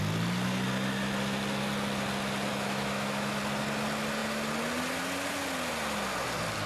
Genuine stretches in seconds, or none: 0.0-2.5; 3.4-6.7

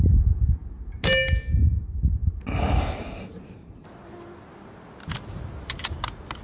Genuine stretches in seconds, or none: 0.0-6.4